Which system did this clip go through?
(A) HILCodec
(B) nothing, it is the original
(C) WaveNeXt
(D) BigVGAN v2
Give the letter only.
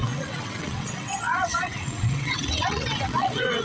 C